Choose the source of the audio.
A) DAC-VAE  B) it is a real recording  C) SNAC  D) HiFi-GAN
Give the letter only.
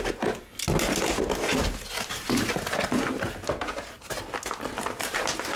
B